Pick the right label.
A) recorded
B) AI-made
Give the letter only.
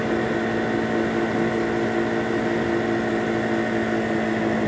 A